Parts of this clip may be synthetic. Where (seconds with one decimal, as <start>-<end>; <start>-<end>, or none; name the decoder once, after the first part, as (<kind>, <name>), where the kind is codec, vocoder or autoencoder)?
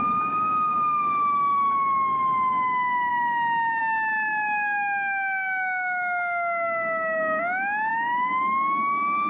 3.1-3.8 (codec, DAC)